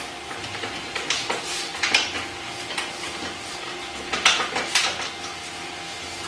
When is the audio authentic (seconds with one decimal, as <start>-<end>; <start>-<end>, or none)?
0.0-6.3